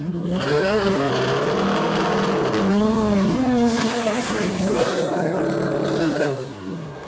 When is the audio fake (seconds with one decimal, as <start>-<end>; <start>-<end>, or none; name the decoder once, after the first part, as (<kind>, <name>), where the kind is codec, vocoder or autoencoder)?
0.0-1.1 (codec, SNAC); 2.7-5.4; 6.0-7.1